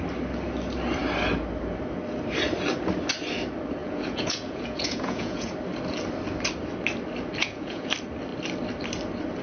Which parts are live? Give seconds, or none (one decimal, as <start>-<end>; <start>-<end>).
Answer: 0.0-3.8; 5.5-7.4; 7.9-9.4